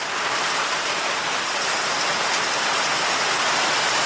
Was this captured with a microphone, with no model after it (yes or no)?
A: yes